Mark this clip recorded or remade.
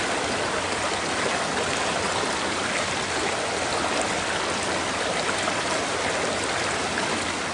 recorded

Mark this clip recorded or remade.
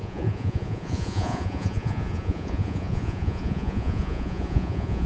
remade